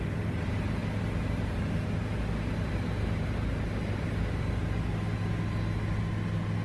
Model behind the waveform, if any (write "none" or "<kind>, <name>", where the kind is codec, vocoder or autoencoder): none